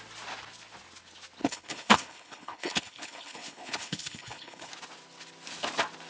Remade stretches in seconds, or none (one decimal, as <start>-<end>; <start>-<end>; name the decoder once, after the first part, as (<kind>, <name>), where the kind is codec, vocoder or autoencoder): 1.4-4.7 (codec, HILCodec)